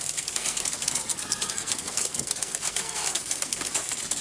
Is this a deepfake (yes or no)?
yes